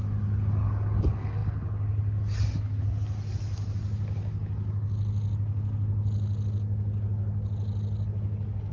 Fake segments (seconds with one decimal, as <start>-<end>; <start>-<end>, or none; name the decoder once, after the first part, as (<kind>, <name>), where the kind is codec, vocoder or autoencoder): none